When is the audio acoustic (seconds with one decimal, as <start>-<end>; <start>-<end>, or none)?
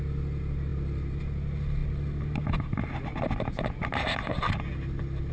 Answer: 0.0-5.3